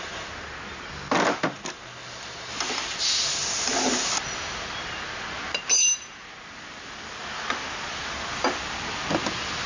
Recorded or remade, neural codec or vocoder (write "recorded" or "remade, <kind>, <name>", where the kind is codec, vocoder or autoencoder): recorded